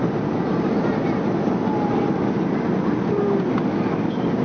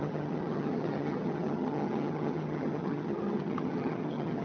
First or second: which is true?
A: first